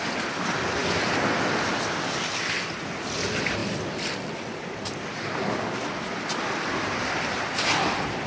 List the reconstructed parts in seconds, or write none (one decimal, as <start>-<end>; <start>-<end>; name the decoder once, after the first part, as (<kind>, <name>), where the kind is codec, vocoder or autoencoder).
none